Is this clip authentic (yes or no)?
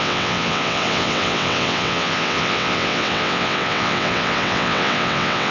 no